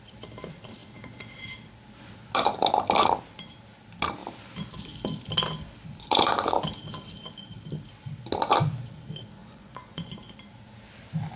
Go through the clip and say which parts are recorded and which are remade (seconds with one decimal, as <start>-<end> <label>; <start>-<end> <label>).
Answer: 0.0-9.4 recorded; 9.4-10.1 remade; 10.1-11.4 recorded